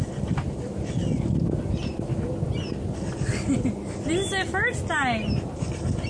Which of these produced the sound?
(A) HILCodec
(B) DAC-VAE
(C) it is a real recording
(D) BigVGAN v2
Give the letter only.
C